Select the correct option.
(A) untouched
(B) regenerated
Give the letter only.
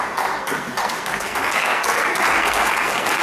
B